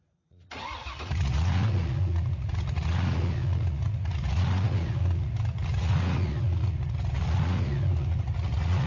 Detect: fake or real fake